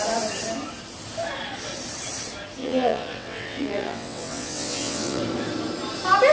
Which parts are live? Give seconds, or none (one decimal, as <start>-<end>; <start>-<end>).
0.0-2.6; 5.2-6.3